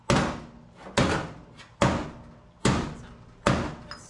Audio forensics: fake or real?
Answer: real